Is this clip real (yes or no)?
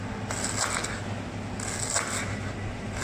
yes